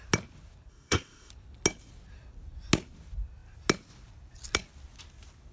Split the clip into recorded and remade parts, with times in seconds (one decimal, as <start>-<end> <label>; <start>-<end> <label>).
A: 0.0-0.7 recorded; 0.7-1.3 remade; 1.3-5.5 recorded